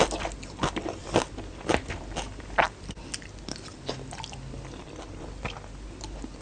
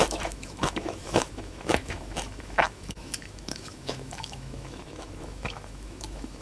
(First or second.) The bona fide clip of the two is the first